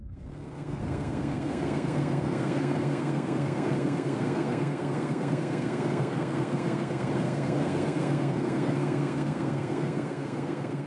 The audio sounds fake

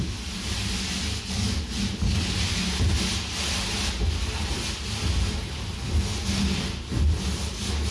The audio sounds real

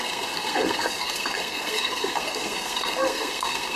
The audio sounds fake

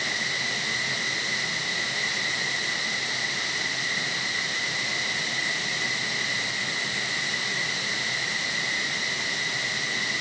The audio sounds real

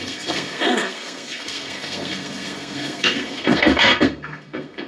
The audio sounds fake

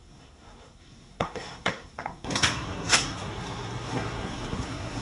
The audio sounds fake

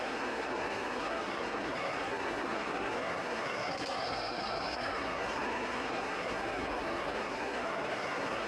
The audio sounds fake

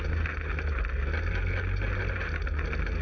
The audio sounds real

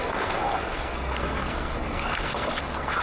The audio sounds fake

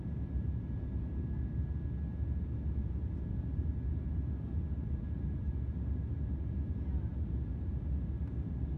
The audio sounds real